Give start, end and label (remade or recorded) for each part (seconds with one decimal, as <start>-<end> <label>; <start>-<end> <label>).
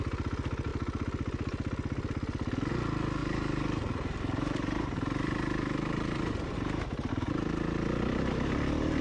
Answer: 0.0-3.2 recorded; 3.2-7.1 remade; 7.1-9.0 recorded